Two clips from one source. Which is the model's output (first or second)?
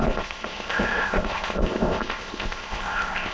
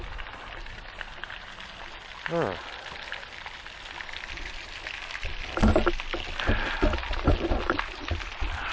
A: first